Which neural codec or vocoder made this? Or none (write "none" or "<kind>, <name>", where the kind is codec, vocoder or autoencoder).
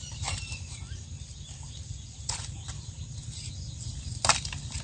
none